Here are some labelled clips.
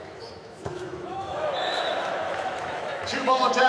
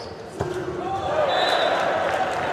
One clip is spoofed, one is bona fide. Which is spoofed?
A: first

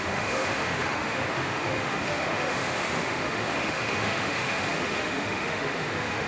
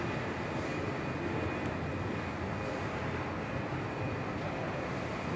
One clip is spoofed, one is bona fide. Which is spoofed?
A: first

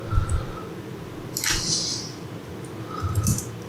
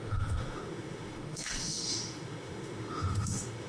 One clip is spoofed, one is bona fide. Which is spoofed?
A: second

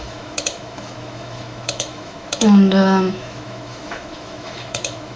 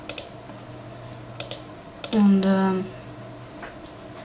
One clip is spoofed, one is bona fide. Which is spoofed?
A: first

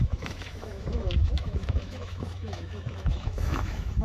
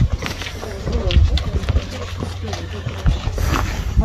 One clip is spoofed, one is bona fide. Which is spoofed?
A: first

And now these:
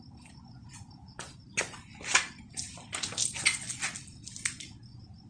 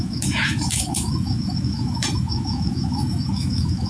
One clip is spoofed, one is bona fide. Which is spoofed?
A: second